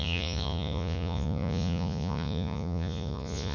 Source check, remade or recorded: remade